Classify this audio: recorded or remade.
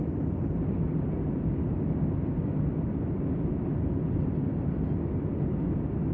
recorded